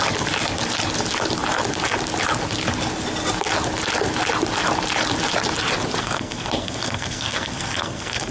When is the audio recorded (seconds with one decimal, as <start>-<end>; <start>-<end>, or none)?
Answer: 0.0-6.0